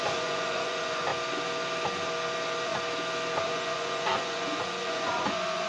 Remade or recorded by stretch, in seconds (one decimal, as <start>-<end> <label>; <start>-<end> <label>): 0.0-1.1 remade; 1.1-3.5 recorded; 3.5-5.7 remade